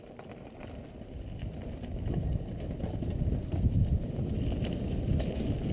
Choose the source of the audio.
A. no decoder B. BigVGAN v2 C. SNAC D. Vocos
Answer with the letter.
A